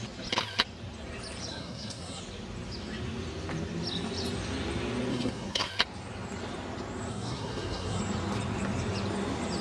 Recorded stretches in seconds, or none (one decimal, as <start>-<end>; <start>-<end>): 0.0-1.5; 2.2-5.1; 5.7-7.1; 8.0-9.6

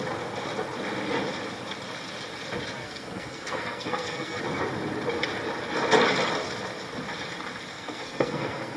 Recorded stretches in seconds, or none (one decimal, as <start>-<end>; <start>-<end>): 0.0-2.8; 4.4-7.7

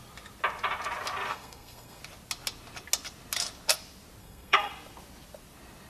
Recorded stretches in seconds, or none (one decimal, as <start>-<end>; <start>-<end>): 0.0-1.3; 2.0-4.2; 4.7-5.9